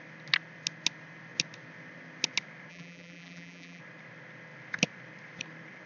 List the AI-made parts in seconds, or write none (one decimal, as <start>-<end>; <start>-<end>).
2.7-3.8